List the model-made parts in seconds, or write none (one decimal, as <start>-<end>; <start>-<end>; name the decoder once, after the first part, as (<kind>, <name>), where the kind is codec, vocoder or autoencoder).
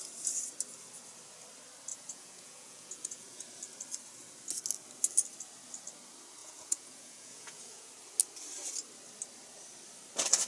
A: 1.9-3.4 (vocoder, Vocos); 6.4-7.9